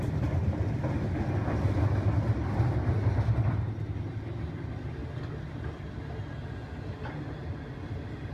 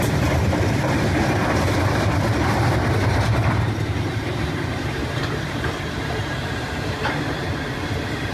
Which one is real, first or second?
first